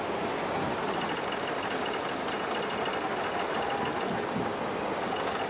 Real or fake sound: real